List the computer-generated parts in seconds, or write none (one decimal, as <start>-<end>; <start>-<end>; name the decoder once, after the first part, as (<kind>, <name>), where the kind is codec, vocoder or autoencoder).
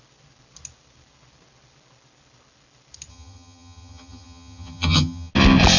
3.1-5.3 (vocoder, HiFi-GAN)